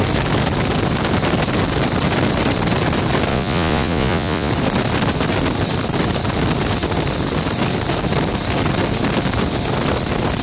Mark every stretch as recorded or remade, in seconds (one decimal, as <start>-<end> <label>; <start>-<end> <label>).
0.0-3.3 recorded; 3.3-4.5 remade; 4.5-10.4 recorded